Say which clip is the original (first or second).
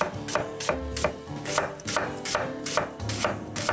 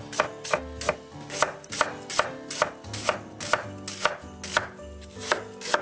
second